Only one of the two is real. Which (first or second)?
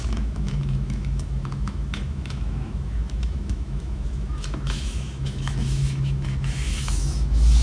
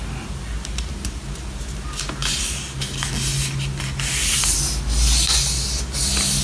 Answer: second